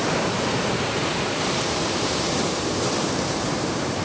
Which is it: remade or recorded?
remade